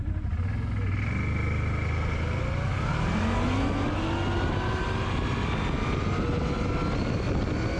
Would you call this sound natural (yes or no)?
yes